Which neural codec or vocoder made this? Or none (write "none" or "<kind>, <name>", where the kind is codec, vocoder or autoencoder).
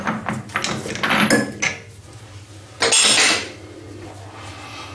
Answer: none